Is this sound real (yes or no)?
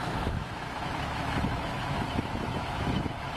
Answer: no